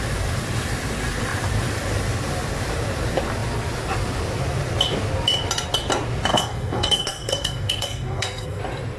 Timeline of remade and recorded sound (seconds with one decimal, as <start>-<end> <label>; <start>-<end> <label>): 0.0-6.3 recorded; 6.3-8.6 remade; 8.6-9.0 recorded